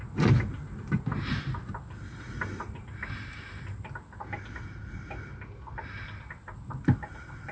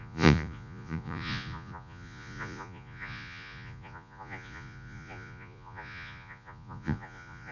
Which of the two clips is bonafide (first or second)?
first